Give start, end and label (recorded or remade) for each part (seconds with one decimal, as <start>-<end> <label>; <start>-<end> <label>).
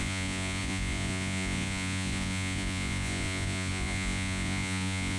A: 0.0-5.2 remade